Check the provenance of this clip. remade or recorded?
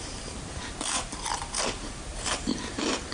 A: remade